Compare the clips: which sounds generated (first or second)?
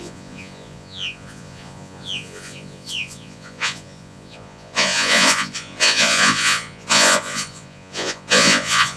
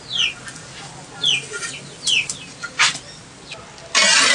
first